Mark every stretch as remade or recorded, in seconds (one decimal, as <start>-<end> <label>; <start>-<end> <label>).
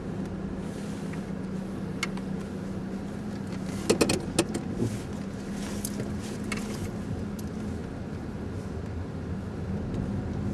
0.0-10.5 recorded